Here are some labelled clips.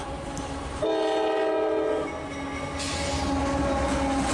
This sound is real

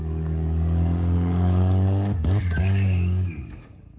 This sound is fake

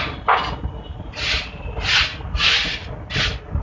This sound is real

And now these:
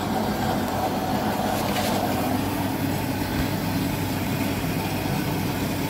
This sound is real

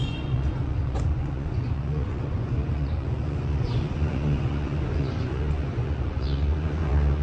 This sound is fake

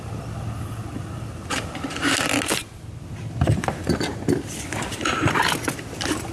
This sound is real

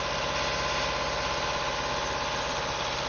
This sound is real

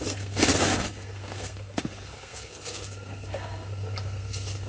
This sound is fake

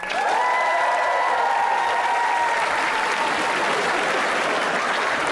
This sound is real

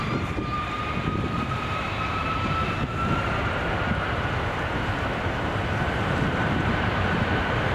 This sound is fake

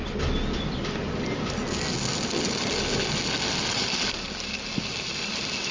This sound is real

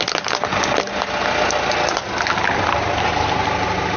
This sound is real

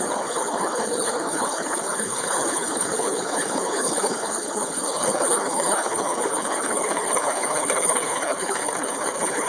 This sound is fake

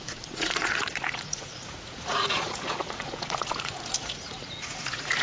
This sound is fake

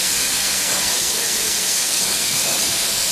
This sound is fake